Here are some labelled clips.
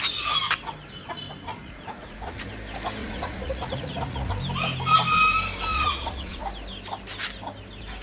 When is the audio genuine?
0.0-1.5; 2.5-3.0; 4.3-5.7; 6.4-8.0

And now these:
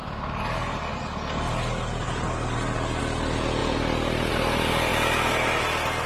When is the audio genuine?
0.0-6.1

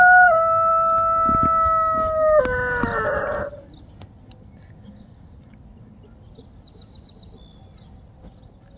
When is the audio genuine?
0.0-8.8

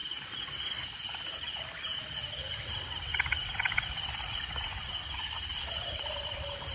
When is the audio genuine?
0.0-6.7

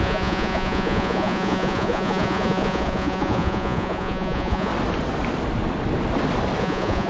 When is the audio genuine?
4.7-6.6